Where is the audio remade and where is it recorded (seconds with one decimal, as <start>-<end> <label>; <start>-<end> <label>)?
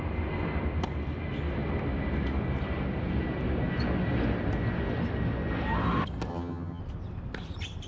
0.0-6.3 recorded; 6.3-6.8 remade; 6.8-7.9 recorded